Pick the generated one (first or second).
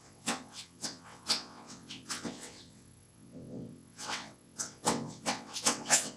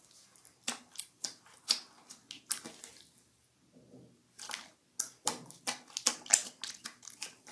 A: first